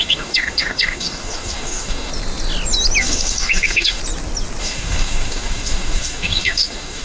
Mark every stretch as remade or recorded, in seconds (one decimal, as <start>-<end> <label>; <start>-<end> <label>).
0.0-2.1 remade; 2.1-3.0 recorded; 3.0-4.0 remade; 4.0-4.6 recorded; 4.6-7.0 remade